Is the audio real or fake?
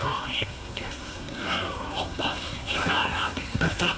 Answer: fake